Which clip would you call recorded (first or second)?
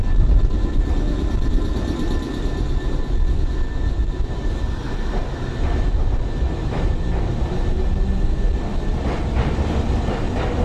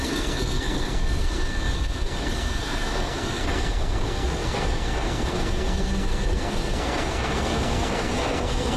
first